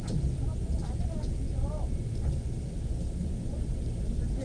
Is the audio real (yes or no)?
yes